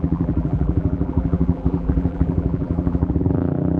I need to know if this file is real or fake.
fake